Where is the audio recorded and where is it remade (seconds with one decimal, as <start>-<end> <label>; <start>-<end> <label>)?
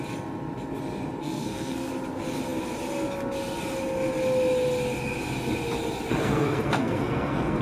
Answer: 0.0-1.2 recorded; 1.2-1.9 remade; 1.9-6.1 recorded; 6.1-7.6 remade